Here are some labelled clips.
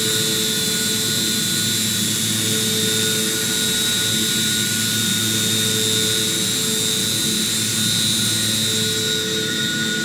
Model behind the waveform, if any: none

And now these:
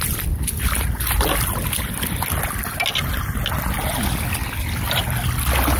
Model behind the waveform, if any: none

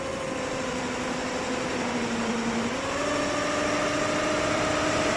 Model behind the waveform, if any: vocoder, BigVGAN v2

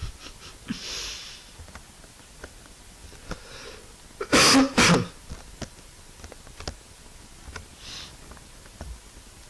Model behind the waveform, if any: none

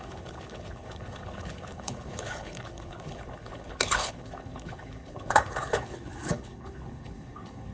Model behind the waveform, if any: codec, HILCodec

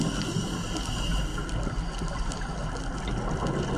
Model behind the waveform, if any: none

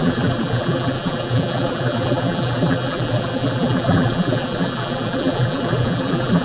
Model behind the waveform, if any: vocoder, BigVGAN v2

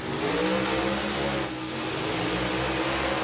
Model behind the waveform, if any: none